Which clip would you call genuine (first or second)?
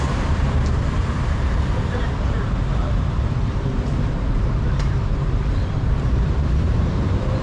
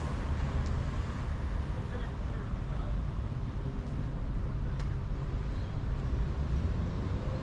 second